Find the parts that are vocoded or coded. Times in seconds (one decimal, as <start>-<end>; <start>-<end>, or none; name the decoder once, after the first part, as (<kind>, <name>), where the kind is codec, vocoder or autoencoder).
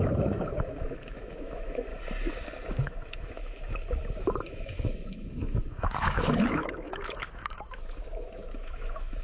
0.0-1.9 (autoencoder, DAC-VAE); 2.7-9.2